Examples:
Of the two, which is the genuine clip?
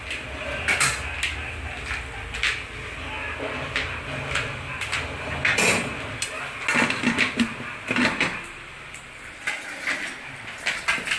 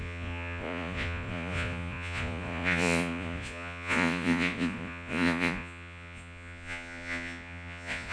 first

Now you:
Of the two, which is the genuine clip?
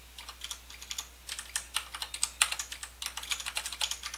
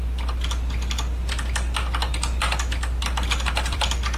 first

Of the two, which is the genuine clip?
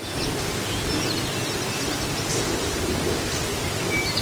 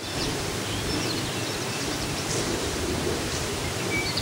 first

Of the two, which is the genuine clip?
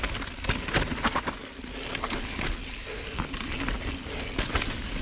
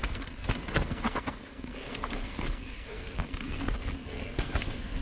first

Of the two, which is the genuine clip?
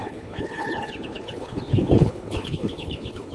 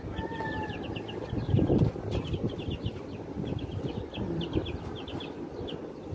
second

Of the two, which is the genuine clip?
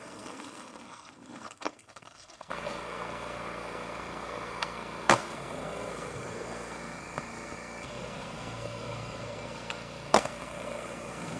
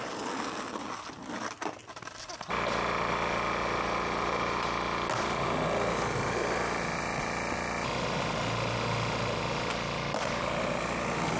second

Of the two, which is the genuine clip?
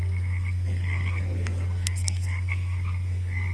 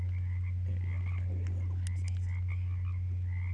second